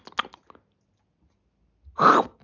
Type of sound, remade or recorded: recorded